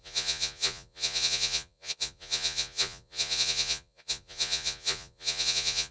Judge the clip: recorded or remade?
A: remade